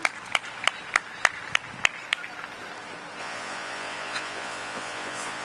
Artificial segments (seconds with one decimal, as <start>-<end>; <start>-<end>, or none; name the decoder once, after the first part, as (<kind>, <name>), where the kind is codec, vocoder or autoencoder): 3.2-5.4 (vocoder, Vocos)